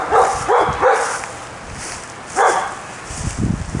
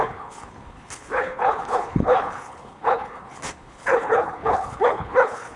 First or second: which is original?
first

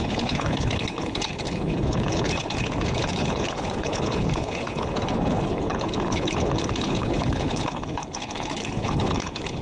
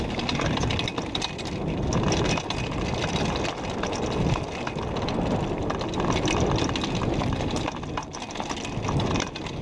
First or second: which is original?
second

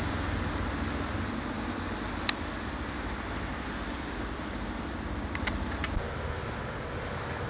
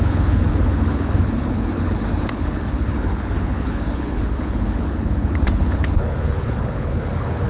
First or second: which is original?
first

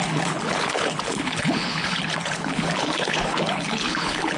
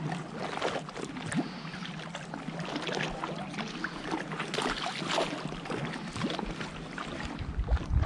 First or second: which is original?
second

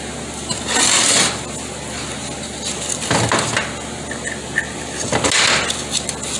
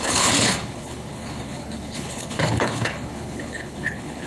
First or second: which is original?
first